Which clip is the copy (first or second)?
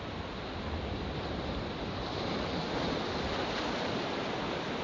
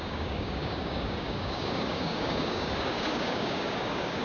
second